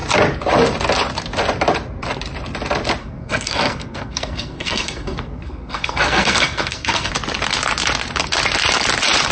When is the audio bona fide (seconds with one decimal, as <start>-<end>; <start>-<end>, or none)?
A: 0.0-3.0; 7.1-9.3